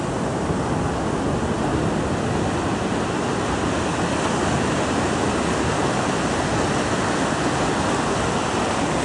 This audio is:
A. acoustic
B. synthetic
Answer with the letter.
A